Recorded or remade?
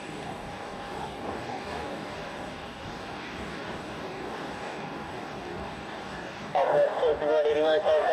remade